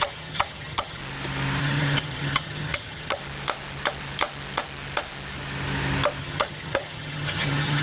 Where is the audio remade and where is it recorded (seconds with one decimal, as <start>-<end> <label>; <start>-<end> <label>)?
0.0-1.0 remade; 1.0-1.6 recorded; 1.6-3.2 remade; 3.2-6.2 recorded; 6.2-7.8 remade